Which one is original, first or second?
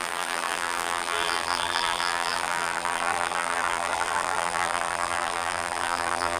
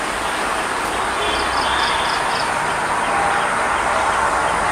second